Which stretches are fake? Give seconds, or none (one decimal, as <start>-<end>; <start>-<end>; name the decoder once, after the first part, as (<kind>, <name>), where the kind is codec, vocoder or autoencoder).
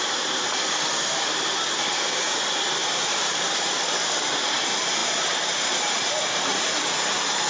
2.8-3.5 (vocoder, BigVGAN v2)